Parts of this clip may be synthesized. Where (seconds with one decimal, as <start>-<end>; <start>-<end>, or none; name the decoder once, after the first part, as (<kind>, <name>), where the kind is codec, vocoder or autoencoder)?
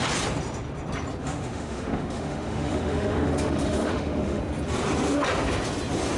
1.2-4.4 (autoencoder, DAC-VAE)